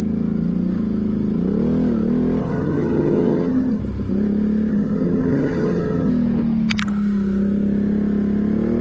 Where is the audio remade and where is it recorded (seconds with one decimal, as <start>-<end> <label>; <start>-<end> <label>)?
0.0-2.4 recorded; 2.4-3.8 remade; 3.8-4.7 recorded; 4.7-6.1 remade; 6.1-8.8 recorded